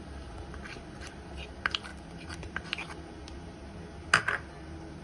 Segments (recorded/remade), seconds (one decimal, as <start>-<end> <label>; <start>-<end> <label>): 0.0-5.0 recorded